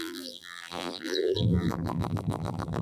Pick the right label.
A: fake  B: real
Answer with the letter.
A